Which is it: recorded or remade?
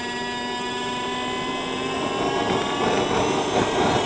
recorded